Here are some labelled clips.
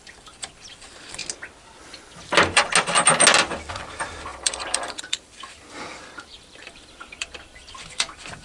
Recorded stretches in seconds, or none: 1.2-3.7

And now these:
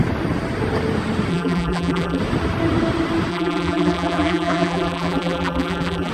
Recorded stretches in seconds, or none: 0.0-1.3; 2.2-3.3